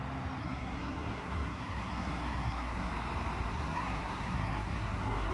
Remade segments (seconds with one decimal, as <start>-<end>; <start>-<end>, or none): 0.4-2.9; 3.5-5.3